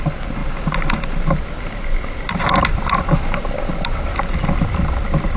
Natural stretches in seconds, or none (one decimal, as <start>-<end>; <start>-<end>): 0.0-5.4